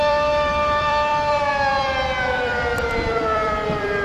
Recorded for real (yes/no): no